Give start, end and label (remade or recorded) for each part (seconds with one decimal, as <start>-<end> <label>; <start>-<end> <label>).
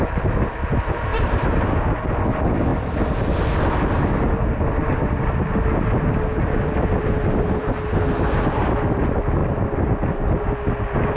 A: 0.0-1.1 recorded; 1.1-1.6 remade; 1.6-2.7 recorded; 2.7-3.5 remade; 3.5-11.2 recorded